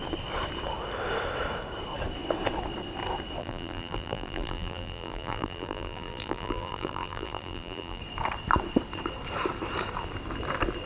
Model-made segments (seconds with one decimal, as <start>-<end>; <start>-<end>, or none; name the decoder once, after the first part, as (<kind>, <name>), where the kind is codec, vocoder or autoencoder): 3.4-8.0 (vocoder, BigVGAN v2)

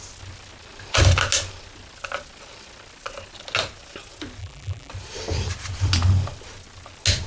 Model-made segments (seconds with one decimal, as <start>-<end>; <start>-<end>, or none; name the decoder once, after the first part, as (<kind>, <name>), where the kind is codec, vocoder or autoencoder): 4.4-4.9 (vocoder, BigVGAN v2)